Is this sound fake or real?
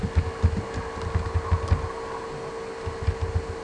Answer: real